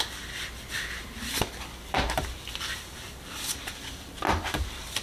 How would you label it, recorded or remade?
remade